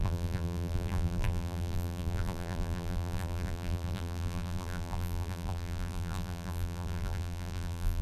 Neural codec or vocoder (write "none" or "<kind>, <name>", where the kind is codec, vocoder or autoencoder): vocoder, BigVGAN v2